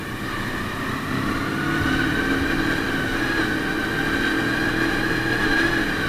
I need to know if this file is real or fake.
real